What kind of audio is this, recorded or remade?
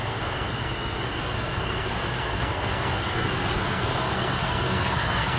remade